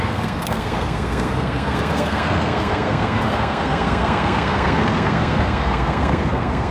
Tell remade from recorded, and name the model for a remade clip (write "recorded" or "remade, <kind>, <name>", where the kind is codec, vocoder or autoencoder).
remade, codec, SNAC